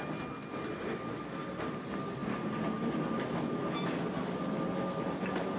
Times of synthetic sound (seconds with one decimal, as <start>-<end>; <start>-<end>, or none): none